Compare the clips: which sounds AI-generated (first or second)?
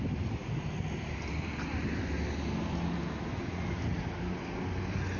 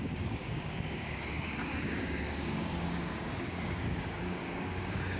second